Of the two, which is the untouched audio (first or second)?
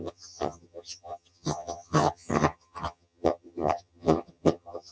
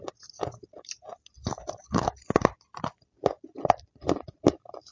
second